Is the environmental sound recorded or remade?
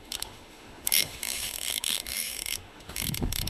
remade